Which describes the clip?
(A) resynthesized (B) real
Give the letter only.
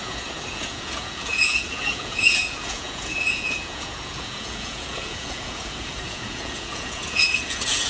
A